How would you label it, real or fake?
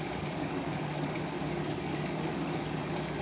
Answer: fake